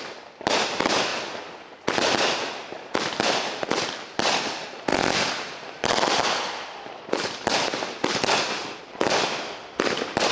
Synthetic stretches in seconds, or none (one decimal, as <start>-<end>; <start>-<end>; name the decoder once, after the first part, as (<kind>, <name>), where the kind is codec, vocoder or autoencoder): 0.0-1.1 (vocoder, BigVGAN v2); 2.7-10.3